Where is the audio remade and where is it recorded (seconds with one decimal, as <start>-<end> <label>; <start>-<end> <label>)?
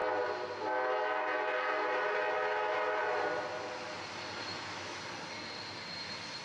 0.0-4.5 recorded; 4.5-5.0 remade; 5.0-6.4 recorded